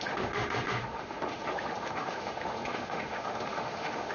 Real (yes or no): no